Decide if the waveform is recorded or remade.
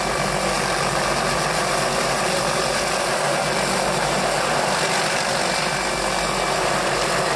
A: recorded